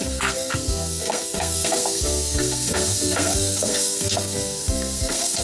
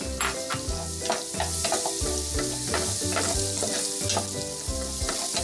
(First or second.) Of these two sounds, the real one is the second